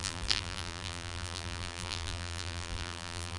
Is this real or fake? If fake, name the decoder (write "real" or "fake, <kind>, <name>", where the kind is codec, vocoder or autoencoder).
fake, vocoder, BigVGAN v2